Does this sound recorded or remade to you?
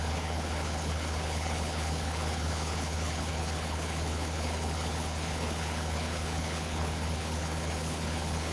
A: remade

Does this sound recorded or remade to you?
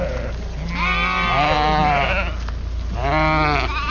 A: recorded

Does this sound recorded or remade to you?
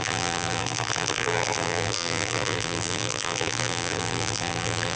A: remade